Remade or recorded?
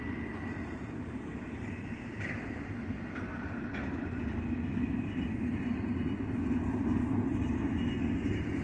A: recorded